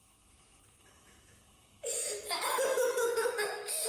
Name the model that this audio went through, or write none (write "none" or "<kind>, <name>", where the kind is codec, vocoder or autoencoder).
autoencoder, DAC-VAE